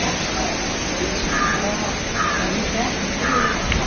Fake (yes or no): no